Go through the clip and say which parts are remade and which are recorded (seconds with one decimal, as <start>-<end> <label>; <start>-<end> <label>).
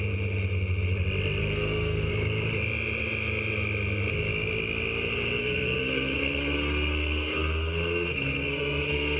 0.0-1.4 recorded; 1.4-2.1 remade; 2.1-5.4 recorded; 5.4-9.2 remade